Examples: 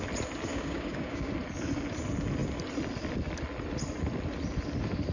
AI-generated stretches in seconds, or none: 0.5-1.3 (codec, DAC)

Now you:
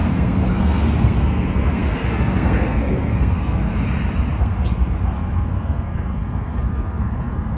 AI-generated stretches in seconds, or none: 0.0-3.7 (codec, SNAC); 4.4-7.6

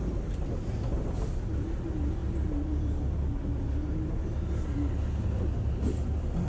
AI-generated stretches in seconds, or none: none

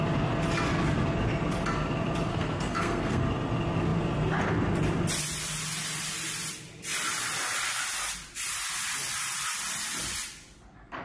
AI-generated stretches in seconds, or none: 2.3-3.2 (codec, SNAC)

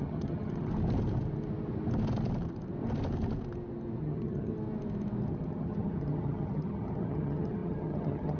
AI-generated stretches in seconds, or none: 0.0-0.7 (vocoder, HiFi-GAN); 4.0-4.5; 5.3-8.4

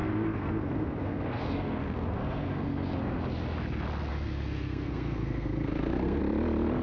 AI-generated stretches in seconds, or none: 0.0-3.2 (codec, SNAC); 4.1-6.2

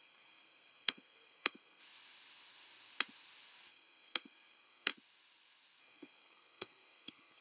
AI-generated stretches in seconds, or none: 0.0-1.8 (codec, SNAC); 3.7-4.9; 5.8-7.4

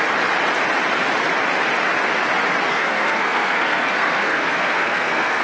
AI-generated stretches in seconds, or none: 2.7-5.4 (codec, SNAC)